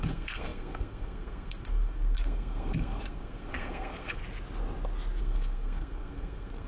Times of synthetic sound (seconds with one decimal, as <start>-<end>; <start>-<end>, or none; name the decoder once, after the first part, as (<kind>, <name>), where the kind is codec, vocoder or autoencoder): 0.0-4.2 (codec, SNAC); 5.2-6.7